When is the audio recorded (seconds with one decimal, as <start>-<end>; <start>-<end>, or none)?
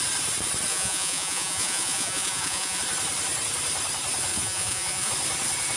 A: 0.0-0.7; 2.8-4.3; 5.1-5.8